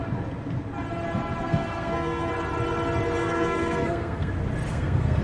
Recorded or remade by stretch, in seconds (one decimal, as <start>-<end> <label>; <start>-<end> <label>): 0.0-1.4 recorded; 1.4-2.3 remade; 2.3-3.2 recorded; 3.2-4.3 remade; 4.3-4.7 recorded; 4.7-5.2 remade